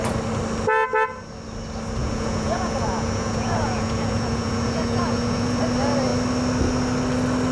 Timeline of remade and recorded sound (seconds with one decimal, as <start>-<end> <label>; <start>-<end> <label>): 0.0-2.0 recorded; 2.0-5.6 remade; 5.6-7.5 recorded